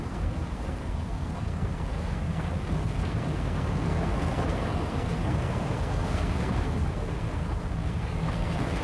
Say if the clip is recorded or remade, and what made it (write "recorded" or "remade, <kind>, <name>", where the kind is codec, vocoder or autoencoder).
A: remade, codec, SNAC